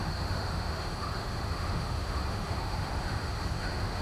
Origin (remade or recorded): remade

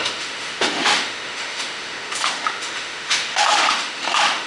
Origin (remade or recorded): remade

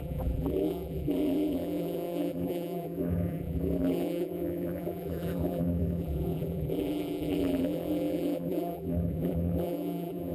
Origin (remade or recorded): remade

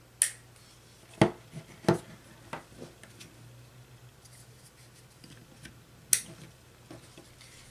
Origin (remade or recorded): recorded